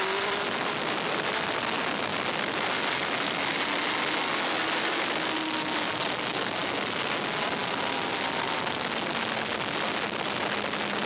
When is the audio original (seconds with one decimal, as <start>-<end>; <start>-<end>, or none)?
0.0-11.1